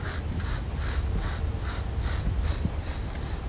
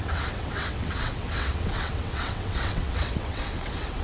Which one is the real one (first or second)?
first